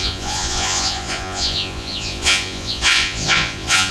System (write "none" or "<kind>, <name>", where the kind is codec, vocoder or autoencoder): vocoder, Vocos